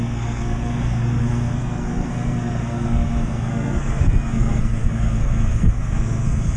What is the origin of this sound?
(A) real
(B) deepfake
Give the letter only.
B